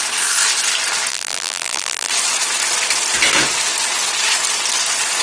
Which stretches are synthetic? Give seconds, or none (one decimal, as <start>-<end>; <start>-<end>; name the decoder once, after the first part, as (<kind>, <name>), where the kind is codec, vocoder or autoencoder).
1.1-2.1 (vocoder, BigVGAN v2)